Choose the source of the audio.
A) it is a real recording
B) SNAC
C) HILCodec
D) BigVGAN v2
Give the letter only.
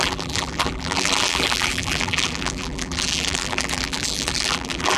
D